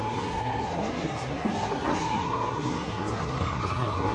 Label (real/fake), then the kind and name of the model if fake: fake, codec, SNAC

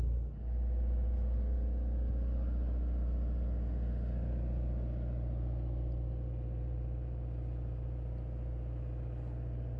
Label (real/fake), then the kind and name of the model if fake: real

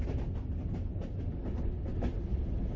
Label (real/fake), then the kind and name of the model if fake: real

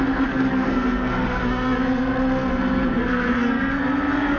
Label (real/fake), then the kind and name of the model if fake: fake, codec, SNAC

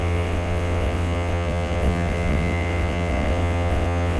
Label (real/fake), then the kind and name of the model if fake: fake, vocoder, WaveNeXt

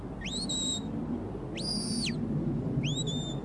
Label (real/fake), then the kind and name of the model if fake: real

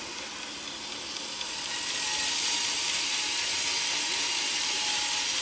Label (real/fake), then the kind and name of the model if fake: real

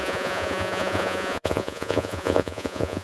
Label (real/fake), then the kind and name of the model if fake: fake, vocoder, Vocos